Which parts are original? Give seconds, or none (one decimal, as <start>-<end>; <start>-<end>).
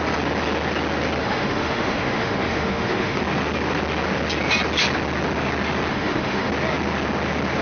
0.0-1.2; 3.2-5.9; 6.5-7.6